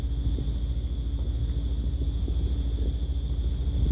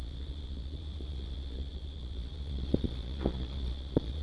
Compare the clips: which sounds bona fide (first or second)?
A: first